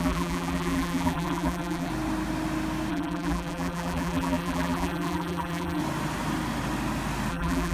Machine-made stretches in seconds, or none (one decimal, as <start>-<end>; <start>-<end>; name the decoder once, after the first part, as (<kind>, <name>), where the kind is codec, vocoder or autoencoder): 0.0-1.9 (vocoder, BigVGAN v2); 2.9-5.8; 7.3-7.7